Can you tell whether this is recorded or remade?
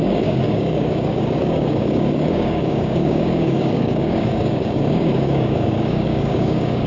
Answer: remade